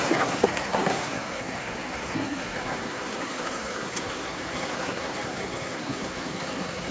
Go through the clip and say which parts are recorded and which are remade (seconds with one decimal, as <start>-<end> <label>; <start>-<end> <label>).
0.0-6.9 remade